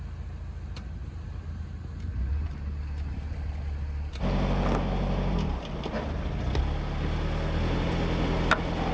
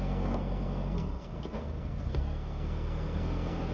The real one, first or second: first